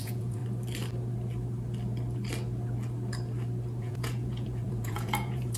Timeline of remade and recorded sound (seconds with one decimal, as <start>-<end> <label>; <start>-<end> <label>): 0.0-0.4 remade; 0.4-3.8 recorded; 3.8-5.6 remade